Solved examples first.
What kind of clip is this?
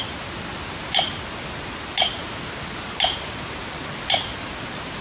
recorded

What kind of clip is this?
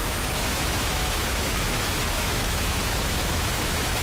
remade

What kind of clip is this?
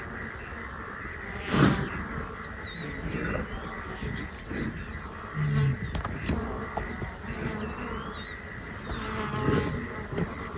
recorded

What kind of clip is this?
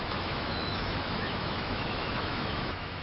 remade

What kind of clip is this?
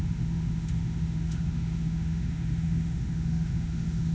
remade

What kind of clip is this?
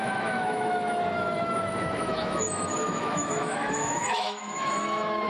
remade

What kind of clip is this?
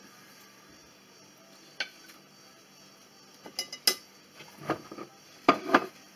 recorded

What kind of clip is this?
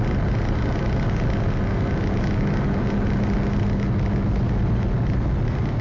recorded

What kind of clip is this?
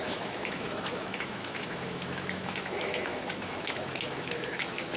remade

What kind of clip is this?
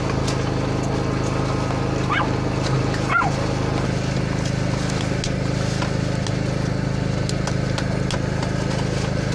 recorded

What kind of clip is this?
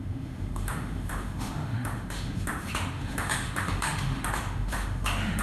remade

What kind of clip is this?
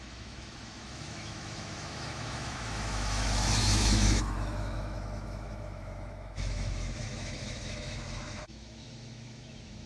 remade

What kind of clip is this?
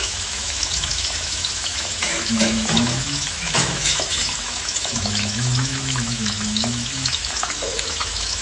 remade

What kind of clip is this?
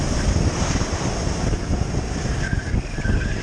recorded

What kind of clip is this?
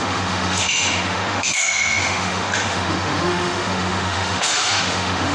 remade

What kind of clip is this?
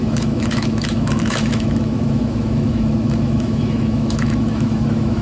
remade